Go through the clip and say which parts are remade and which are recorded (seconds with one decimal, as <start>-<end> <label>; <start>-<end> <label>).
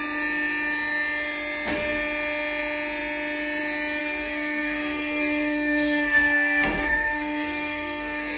0.0-4.0 recorded; 4.0-8.4 remade